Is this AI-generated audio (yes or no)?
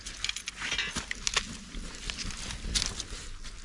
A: no